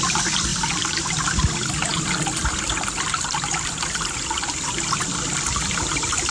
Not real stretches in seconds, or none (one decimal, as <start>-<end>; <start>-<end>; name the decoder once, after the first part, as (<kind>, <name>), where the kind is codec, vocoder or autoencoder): none